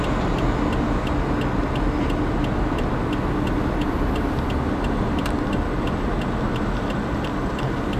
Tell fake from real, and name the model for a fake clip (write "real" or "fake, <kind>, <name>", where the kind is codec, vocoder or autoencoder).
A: real